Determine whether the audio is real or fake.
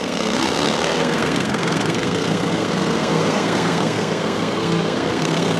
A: fake